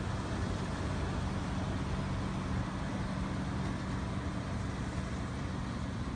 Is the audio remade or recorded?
recorded